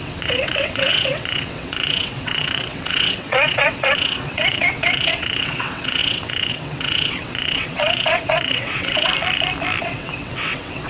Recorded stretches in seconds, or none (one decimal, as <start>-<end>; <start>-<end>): 9.1-9.8